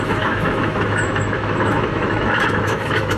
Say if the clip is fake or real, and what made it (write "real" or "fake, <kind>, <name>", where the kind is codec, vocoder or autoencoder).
fake, autoencoder, DAC-VAE